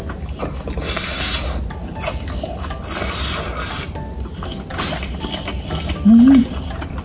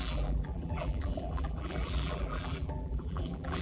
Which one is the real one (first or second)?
first